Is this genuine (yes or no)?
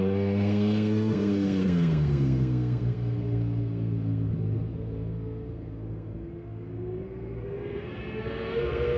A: no